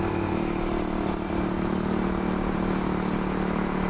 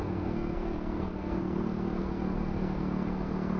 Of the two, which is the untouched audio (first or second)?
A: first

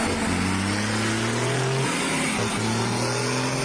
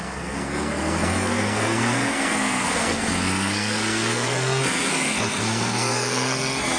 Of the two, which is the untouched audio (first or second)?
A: first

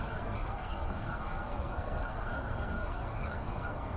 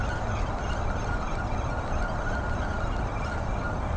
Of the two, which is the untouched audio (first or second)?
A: second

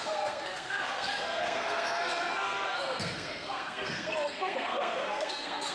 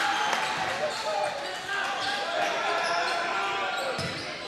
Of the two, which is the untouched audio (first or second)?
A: second